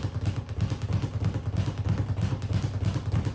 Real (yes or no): yes